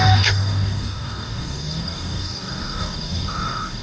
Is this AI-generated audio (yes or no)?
yes